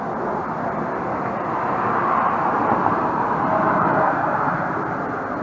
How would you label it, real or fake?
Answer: real